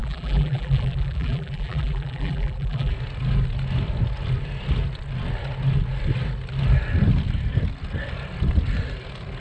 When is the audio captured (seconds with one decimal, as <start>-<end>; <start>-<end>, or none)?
2.9-9.4